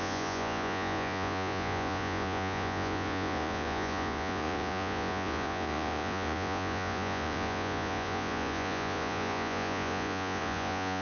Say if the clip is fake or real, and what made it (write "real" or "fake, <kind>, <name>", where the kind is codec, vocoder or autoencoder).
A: fake, vocoder, Vocos